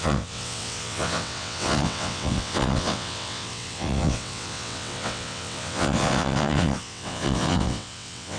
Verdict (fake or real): fake